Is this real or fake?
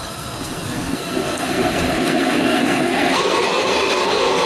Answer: fake